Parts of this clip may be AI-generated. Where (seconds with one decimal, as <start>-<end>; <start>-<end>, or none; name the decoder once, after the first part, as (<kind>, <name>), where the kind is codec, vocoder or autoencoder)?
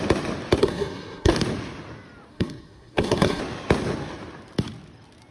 0.6-1.3 (codec, SNAC); 2.3-3.4